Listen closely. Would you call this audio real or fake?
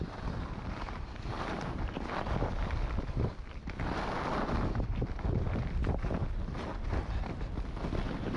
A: real